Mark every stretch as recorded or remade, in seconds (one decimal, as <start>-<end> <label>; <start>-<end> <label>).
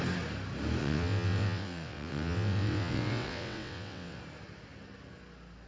0.0-0.8 recorded; 0.8-4.2 remade; 4.2-5.7 recorded